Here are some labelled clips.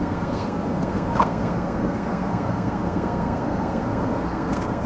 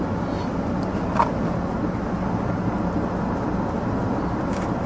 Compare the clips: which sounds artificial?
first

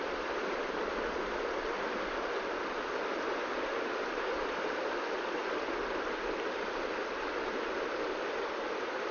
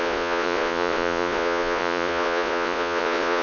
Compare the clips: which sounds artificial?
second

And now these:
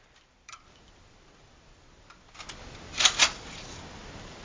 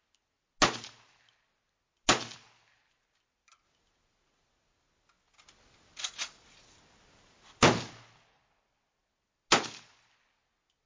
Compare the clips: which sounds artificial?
first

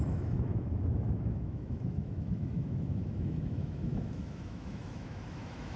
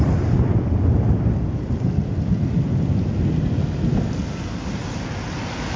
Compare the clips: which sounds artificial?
first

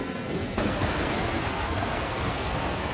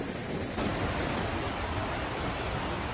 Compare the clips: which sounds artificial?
first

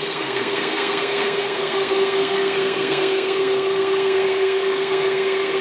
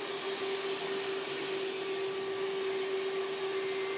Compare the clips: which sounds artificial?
first